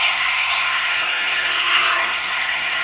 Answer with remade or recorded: remade